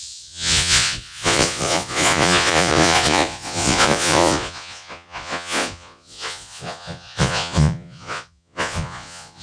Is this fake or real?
fake